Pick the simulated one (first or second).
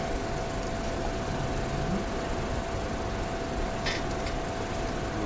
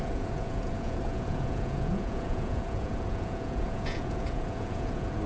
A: second